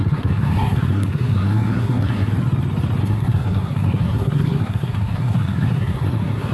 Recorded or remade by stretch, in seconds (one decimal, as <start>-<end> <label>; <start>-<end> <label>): 0.0-2.3 remade; 2.3-3.0 recorded; 3.0-6.5 remade